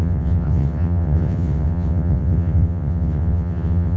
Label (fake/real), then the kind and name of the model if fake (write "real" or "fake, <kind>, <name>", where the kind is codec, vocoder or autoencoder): fake, vocoder, WaveNeXt